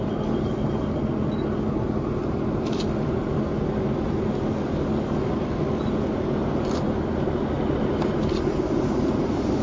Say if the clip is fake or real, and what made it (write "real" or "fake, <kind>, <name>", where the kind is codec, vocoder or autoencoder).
real